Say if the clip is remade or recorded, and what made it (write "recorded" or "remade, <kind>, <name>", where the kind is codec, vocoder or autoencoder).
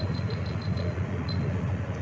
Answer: remade, vocoder, Vocos